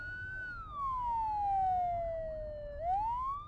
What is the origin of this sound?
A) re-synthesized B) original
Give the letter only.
B